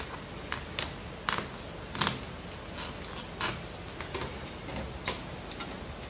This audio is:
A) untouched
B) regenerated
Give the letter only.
A